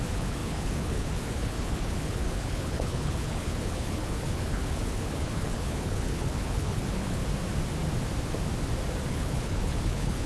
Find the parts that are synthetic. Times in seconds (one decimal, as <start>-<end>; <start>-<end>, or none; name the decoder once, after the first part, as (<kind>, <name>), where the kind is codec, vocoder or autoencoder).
0.0-7.2 (codec, HILCodec); 9.1-10.3